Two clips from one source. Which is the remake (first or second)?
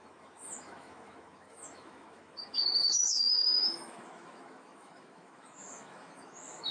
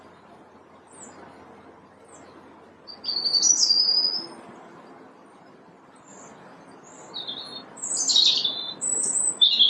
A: first